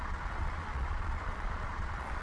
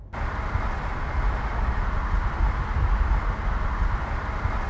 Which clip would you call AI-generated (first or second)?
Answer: first